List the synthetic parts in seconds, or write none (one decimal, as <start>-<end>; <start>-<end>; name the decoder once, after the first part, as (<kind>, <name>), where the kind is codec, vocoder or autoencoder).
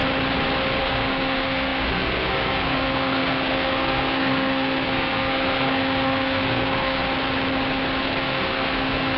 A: 0.8-7.0 (codec, SNAC); 8.0-9.2